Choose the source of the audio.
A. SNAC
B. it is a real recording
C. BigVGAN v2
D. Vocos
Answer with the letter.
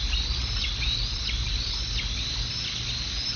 B